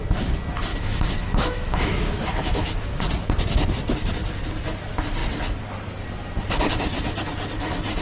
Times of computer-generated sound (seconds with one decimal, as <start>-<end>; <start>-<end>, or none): 0.7-3.0